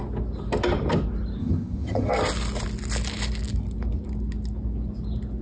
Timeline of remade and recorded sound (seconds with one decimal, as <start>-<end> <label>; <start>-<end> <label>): 0.0-1.4 recorded; 1.4-2.1 remade; 2.1-5.4 recorded